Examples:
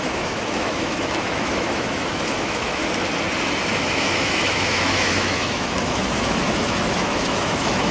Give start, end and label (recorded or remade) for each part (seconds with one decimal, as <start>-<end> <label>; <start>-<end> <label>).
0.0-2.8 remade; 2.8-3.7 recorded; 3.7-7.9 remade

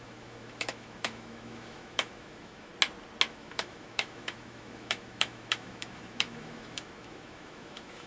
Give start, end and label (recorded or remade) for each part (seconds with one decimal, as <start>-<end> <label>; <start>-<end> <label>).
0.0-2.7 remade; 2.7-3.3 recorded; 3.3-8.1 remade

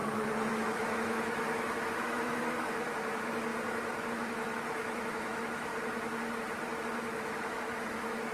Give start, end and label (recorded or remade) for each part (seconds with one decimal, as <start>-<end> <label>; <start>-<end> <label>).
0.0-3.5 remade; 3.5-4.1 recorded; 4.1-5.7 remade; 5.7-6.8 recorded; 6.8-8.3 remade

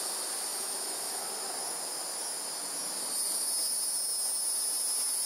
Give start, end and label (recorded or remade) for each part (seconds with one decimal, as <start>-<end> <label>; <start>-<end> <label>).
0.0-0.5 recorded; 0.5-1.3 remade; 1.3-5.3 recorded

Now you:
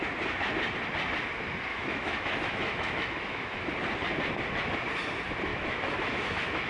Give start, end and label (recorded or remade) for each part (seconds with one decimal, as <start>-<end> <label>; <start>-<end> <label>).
0.0-1.7 recorded; 1.7-3.7 remade; 3.7-5.5 recorded; 5.5-6.7 remade

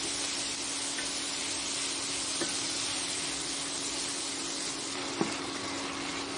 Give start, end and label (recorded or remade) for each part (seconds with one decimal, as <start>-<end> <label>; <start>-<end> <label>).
0.0-6.4 recorded